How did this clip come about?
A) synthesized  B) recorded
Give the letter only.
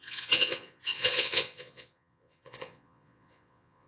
A